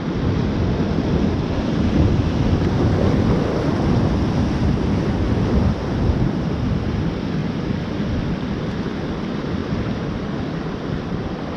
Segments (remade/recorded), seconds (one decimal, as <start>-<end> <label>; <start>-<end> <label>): 0.0-11.6 recorded